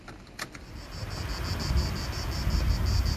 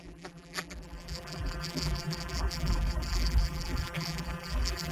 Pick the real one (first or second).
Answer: first